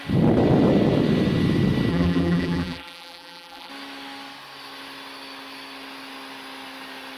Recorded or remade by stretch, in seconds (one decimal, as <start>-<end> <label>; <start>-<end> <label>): 0.0-1.9 recorded; 1.9-3.7 remade; 3.7-7.2 recorded